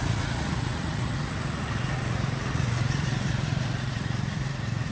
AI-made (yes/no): yes